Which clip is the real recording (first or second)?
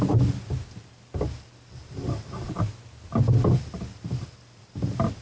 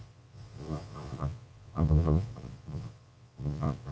first